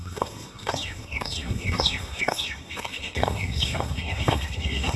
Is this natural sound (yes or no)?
no